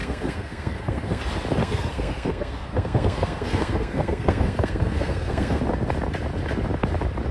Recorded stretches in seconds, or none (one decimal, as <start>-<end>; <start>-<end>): 1.2-1.6; 5.6-7.3